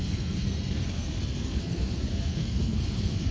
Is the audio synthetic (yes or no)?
yes